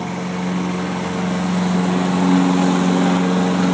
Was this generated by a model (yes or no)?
no